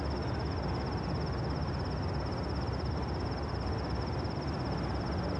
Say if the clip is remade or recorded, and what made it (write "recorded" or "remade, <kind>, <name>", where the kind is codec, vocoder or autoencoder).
recorded